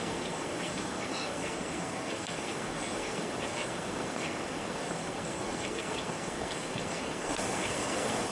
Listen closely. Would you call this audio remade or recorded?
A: remade